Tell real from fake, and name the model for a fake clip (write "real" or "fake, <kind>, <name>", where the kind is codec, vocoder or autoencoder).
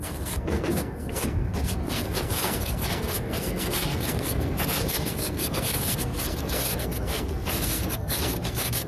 fake, codec, SNAC